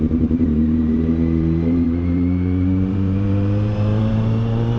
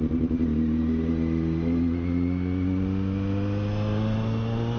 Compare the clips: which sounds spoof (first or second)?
first